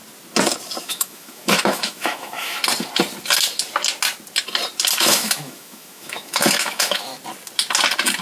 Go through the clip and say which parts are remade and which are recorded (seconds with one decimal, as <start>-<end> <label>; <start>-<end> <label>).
0.0-0.8 recorded; 0.8-2.6 remade; 2.6-5.0 recorded; 5.0-7.1 remade; 7.1-8.2 recorded